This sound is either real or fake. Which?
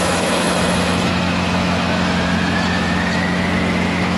fake